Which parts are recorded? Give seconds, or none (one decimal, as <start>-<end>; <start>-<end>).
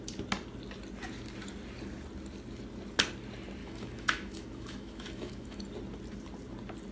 0.0-3.6; 5.6-6.9